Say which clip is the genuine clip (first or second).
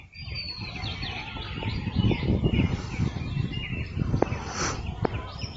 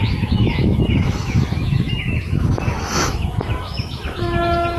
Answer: first